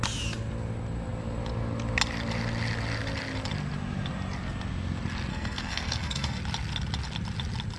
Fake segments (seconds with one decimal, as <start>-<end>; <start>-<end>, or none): 5.3-6.4